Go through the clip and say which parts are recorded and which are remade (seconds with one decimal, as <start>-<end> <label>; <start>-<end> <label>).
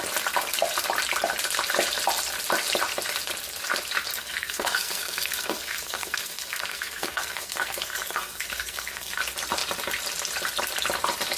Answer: 0.0-4.1 recorded; 4.1-9.2 remade; 9.2-11.4 recorded